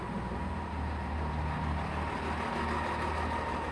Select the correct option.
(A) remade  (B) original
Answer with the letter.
B